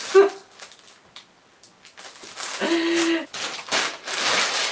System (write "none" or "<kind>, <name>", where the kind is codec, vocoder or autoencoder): none